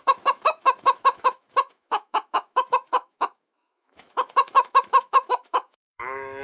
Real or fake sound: fake